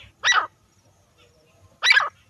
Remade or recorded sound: recorded